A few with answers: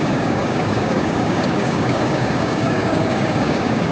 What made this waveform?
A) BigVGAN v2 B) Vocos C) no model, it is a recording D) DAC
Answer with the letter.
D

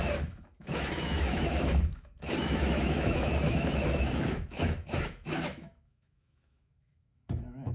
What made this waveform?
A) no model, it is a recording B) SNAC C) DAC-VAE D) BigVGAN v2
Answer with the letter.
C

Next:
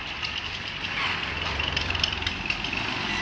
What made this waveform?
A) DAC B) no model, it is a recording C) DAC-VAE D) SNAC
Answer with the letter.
B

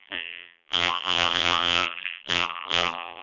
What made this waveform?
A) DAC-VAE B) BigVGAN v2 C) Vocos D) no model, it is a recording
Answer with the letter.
B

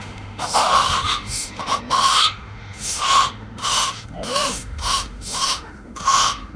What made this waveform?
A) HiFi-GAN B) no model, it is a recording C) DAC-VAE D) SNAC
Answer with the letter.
C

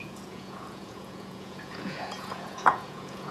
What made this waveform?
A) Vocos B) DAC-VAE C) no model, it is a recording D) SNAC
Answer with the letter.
A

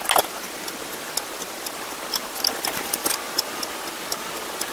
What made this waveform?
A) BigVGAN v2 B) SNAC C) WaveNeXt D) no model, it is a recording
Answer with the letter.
D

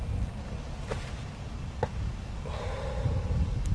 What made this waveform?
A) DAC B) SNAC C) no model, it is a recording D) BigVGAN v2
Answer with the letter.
C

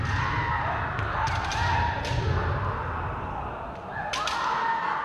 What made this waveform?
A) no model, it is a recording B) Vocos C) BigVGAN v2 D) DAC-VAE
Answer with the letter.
A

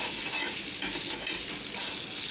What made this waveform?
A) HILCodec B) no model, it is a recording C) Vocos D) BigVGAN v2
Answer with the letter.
B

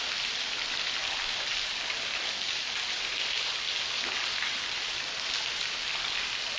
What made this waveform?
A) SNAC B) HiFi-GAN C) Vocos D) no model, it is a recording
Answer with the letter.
D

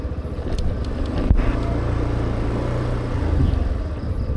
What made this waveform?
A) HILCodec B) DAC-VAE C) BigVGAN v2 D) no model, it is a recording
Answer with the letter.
D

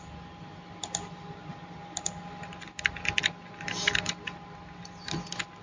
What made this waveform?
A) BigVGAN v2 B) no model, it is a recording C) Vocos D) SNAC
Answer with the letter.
B